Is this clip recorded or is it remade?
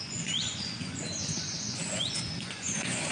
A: remade